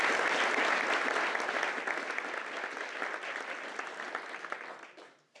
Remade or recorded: recorded